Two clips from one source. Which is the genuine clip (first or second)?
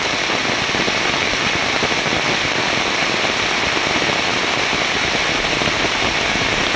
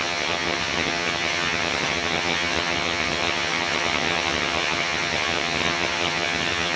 first